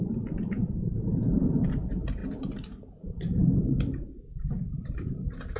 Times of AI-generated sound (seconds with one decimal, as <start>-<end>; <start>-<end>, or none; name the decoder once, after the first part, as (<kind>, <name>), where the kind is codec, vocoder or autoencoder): 0.0-5.6 (vocoder, BigVGAN v2)